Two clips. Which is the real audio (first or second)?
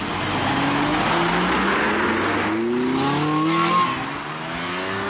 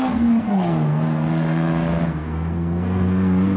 first